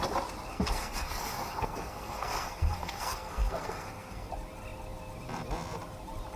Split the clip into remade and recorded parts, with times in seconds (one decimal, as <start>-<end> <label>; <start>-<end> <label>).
0.0-0.5 recorded; 0.5-4.3 remade; 4.3-6.4 recorded